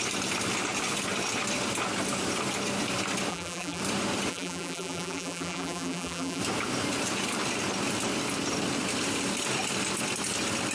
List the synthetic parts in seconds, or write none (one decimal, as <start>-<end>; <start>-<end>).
3.3-3.8; 4.3-6.4